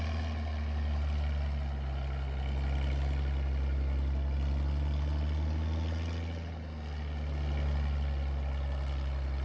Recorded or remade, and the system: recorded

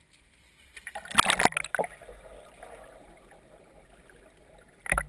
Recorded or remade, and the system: recorded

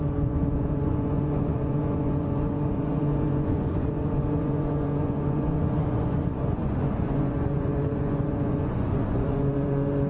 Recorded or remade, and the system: remade, vocoder, Vocos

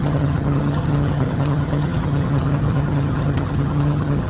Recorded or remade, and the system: remade, vocoder, HiFi-GAN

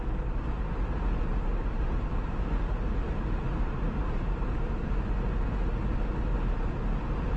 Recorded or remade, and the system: recorded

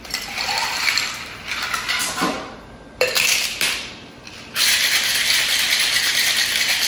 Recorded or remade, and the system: remade, vocoder, BigVGAN v2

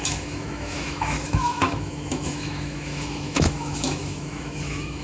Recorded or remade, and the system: remade, autoencoder, DAC-VAE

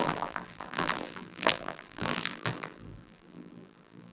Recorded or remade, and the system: remade, vocoder, BigVGAN v2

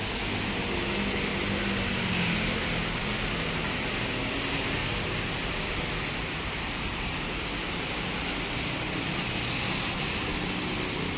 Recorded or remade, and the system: recorded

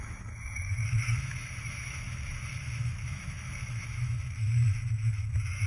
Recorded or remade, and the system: remade, autoencoder, DAC-VAE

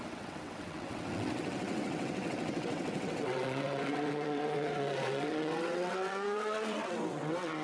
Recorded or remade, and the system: remade, vocoder, WaveNeXt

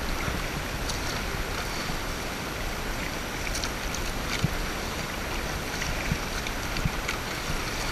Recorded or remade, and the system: recorded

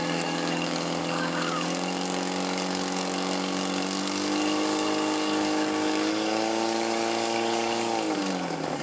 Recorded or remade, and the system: remade, codec, DAC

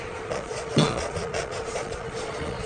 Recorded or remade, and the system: remade, vocoder, Vocos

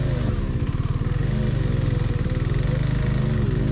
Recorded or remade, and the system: recorded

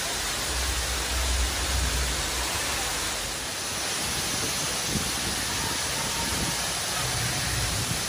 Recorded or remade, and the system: recorded